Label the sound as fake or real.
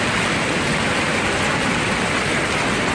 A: real